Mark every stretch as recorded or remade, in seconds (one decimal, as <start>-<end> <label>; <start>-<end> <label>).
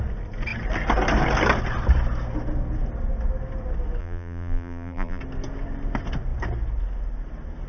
0.0-4.0 recorded; 4.0-5.2 remade; 5.2-7.7 recorded